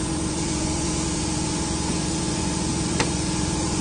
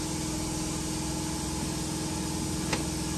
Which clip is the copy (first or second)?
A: first